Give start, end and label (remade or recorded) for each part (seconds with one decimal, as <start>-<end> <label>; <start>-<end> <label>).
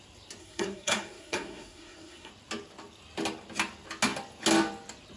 0.0-0.4 recorded; 0.4-2.3 remade; 2.3-5.2 recorded